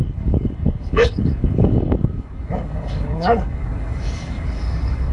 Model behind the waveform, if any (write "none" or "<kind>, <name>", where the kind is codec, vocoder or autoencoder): codec, DAC